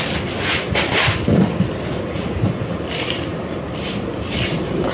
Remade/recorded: remade